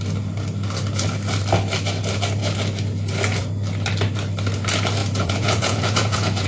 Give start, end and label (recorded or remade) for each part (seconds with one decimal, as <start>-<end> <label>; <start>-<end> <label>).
0.0-5.0 recorded; 5.0-6.5 remade